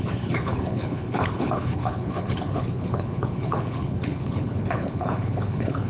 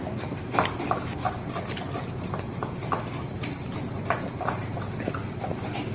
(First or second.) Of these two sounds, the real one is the second